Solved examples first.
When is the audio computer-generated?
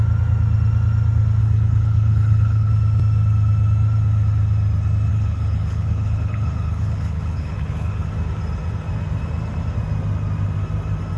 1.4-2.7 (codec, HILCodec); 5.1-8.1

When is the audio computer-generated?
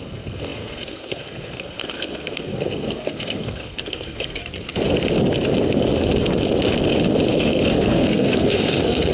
0.0-4.4 (codec, SNAC); 7.3-9.1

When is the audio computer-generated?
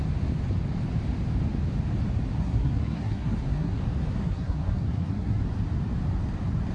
2.4-3.8 (codec, SNAC); 4.2-5.4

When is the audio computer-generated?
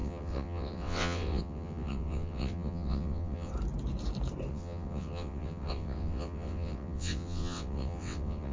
0.0-3.5 (vocoder, WaveNeXt); 4.5-8.5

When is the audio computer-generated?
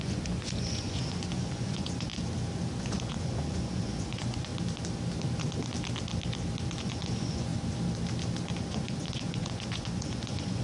0.0-2.1 (vocoder, Vocos); 2.8-4.5; 6.8-7.5; 8.5-10.6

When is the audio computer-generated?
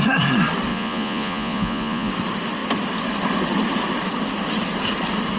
0.7-2.1 (vocoder, Vocos)